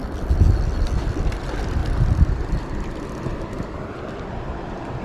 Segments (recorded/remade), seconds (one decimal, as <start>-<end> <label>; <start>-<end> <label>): 0.0-1.8 recorded; 1.8-5.0 remade